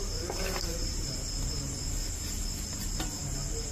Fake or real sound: real